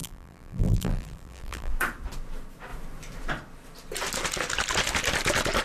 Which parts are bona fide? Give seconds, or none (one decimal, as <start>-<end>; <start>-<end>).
1.7-5.6